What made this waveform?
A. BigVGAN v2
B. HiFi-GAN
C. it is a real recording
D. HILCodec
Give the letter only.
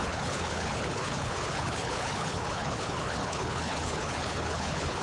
D